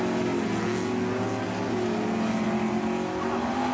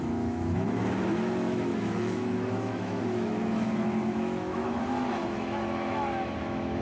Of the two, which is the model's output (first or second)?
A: second